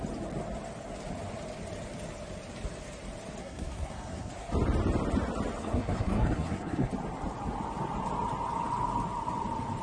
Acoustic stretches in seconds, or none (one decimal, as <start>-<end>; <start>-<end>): 0.0-3.4; 4.3-5.6; 6.9-9.8